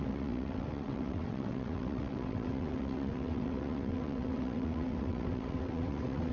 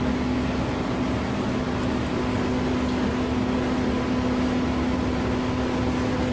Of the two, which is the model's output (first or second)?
first